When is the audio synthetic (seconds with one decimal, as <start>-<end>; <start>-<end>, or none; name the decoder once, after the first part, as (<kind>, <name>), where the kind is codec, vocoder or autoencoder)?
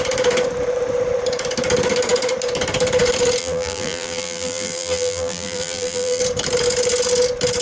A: 3.4-6.2 (vocoder, BigVGAN v2)